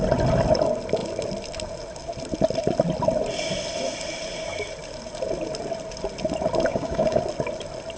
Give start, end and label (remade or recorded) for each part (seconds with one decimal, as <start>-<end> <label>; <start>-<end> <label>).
0.0-6.7 recorded; 6.7-7.2 remade; 7.2-8.0 recorded